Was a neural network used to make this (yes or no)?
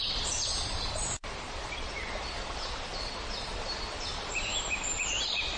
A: no